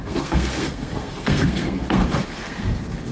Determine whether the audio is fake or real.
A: fake